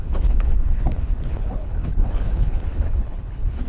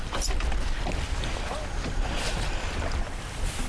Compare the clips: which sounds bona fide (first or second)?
second